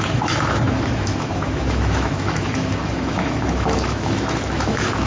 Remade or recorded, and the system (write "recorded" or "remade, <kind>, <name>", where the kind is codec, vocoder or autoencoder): remade, autoencoder, DAC-VAE